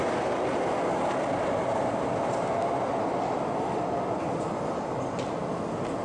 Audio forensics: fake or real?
real